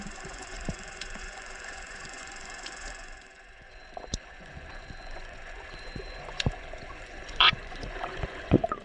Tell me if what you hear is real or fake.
fake